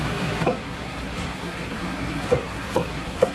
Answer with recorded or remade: remade